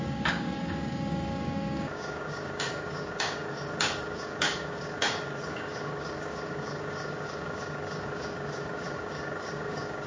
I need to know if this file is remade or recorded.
remade